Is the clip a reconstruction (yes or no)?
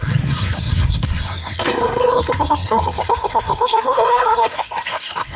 yes